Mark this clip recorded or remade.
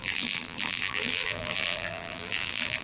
remade